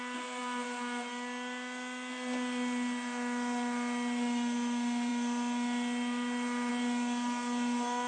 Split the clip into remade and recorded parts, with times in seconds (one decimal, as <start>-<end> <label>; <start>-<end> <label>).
0.0-8.1 recorded